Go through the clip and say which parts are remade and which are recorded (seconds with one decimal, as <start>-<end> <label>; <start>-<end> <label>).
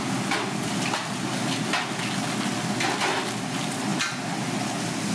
0.0-5.1 recorded